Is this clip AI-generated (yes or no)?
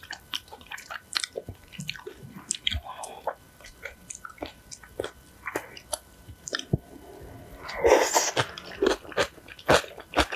yes